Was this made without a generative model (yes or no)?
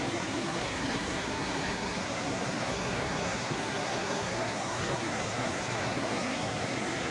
no